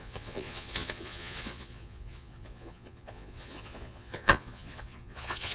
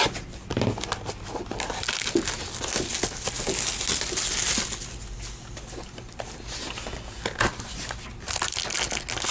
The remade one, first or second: first